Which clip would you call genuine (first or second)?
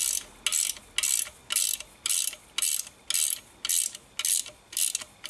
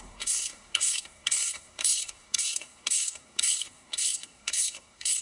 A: first